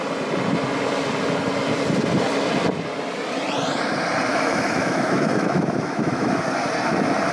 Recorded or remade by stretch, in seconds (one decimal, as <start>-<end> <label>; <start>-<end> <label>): 0.0-4.3 recorded; 4.3-6.4 remade; 6.4-7.3 recorded